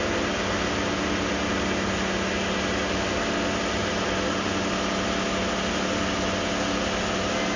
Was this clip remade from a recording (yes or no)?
no